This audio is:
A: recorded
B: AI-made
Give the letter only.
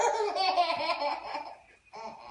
A